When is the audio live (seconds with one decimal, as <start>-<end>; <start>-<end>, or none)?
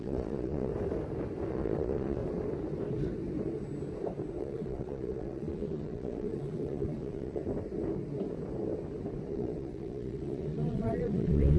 0.7-1.5; 2.2-4.4; 7.4-9.3